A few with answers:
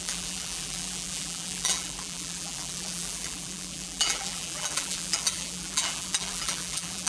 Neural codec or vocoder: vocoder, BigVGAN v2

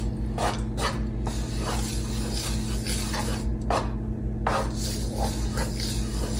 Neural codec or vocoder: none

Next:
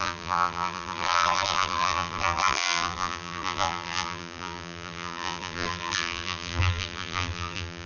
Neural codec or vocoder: vocoder, BigVGAN v2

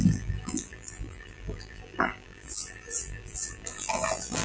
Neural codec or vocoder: vocoder, BigVGAN v2